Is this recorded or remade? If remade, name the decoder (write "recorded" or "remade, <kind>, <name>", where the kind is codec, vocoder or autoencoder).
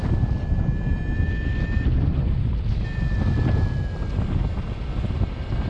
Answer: recorded